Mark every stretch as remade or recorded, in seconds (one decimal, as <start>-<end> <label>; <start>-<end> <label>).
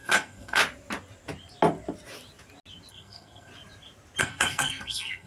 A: 0.0-0.6 remade; 0.6-2.9 recorded; 2.9-3.5 remade; 3.5-4.2 recorded; 4.2-5.3 remade